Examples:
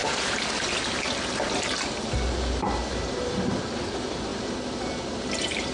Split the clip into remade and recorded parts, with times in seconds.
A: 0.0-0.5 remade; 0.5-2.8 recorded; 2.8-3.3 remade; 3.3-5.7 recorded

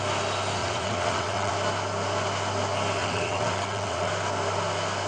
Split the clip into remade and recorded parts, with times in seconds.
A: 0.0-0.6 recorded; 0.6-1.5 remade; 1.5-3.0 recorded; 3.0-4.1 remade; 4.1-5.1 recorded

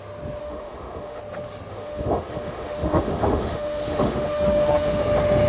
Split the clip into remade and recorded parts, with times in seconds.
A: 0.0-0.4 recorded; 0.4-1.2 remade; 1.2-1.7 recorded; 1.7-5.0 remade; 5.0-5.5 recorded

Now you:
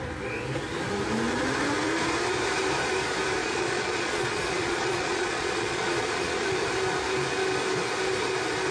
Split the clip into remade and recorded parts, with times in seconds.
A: 0.0-3.4 recorded; 3.4-6.5 remade; 6.5-8.7 recorded

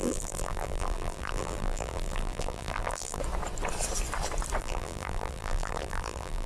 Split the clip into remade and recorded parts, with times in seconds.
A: 0.0-3.2 remade; 3.2-4.6 recorded; 4.6-6.5 remade

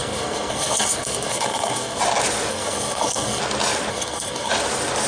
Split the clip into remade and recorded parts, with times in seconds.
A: 0.0-2.0 remade; 2.0-2.5 recorded; 2.5-3.4 remade; 3.4-3.9 recorded; 3.9-4.5 remade; 4.5-5.1 recorded

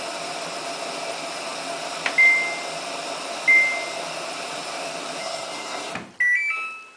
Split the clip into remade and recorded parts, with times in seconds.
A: 0.0-5.2 recorded; 5.2-5.9 remade; 5.9-7.0 recorded

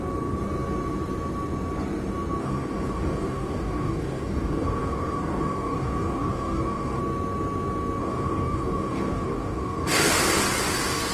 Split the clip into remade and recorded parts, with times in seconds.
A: 0.0-2.4 recorded; 2.4-7.0 remade; 7.0-8.0 recorded; 8.0-10.1 remade; 10.1-11.1 recorded